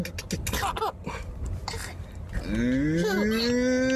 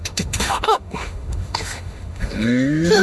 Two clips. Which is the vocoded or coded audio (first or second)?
second